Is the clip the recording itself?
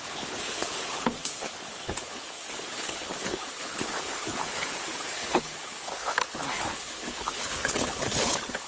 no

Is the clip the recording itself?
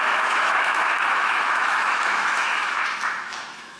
no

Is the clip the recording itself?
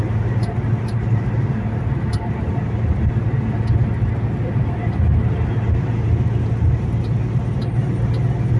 yes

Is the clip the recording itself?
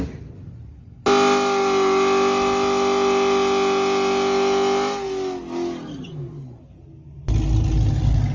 yes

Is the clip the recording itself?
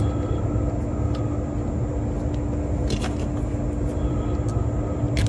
yes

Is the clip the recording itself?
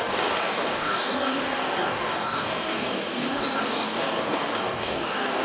no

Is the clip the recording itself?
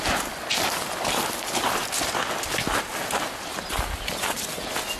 yes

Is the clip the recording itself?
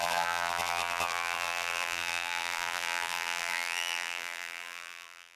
no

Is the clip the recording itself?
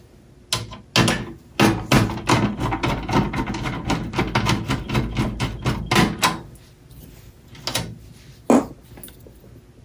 yes